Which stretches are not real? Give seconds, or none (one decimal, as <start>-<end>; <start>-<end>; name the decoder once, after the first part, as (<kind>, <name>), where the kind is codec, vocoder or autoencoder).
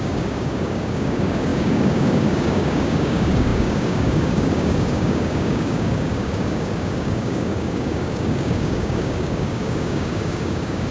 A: 0.0-10.9 (codec, DAC)